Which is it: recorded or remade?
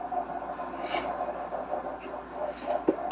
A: recorded